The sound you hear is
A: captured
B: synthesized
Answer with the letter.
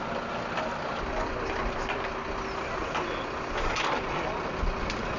A